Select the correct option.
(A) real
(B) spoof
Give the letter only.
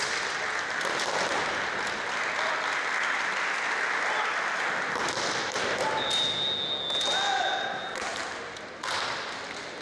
A